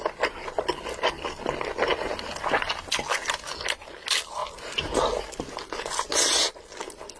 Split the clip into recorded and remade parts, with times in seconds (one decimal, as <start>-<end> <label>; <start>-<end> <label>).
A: 0.0-7.2 recorded